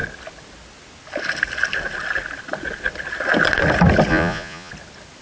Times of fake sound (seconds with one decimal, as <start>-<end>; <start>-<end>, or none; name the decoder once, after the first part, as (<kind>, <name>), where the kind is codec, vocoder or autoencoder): 4.1-4.7 (vocoder, Vocos)